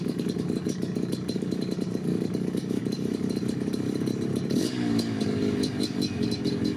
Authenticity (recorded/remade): remade